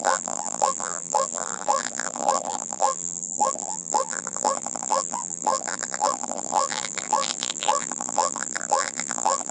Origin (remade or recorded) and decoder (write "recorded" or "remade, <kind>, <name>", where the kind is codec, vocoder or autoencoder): remade, vocoder, BigVGAN v2